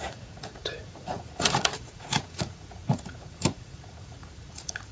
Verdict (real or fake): fake